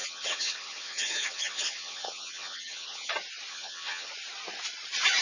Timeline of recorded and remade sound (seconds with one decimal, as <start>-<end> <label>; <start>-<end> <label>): 0.0-3.1 remade; 3.1-3.5 recorded; 3.5-4.1 remade; 4.1-5.2 recorded